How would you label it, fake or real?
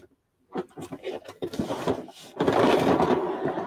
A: fake